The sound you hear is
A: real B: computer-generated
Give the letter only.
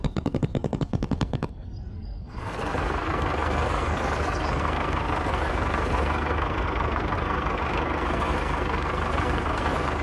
B